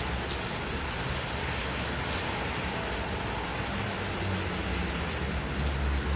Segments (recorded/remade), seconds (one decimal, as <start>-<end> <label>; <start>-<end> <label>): 0.0-6.2 recorded